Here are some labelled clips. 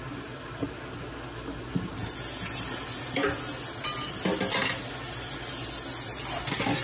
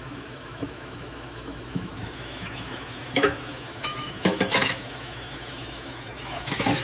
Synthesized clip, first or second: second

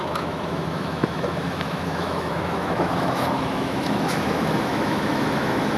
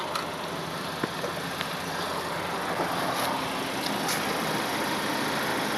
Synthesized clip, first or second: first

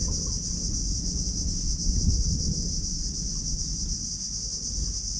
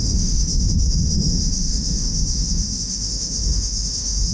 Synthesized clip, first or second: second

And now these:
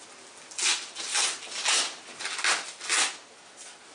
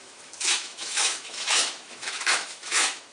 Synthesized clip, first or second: second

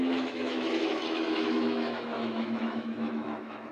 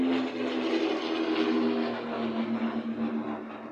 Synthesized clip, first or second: first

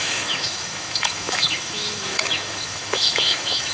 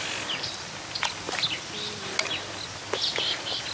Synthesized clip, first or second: first